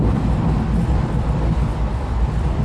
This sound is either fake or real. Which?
real